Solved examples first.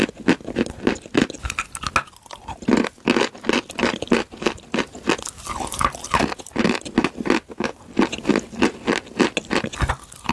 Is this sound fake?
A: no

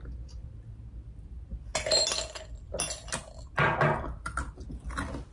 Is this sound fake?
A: no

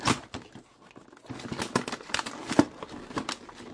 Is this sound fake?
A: no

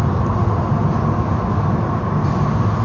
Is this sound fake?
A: no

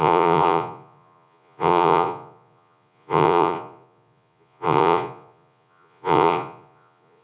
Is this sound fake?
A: yes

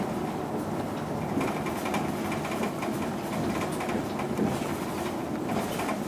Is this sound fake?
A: no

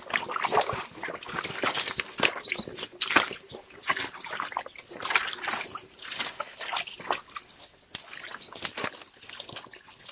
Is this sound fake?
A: no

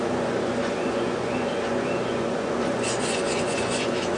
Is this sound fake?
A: yes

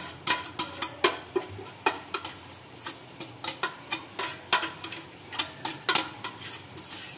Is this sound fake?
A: no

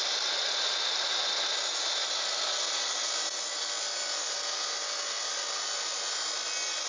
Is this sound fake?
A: no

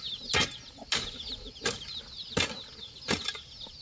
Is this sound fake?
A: no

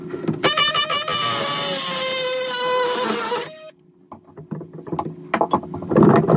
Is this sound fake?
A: no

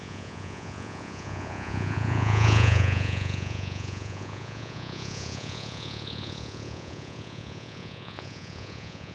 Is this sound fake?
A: yes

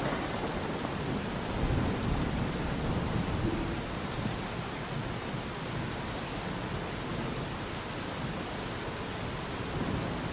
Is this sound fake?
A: no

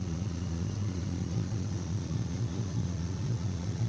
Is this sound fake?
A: yes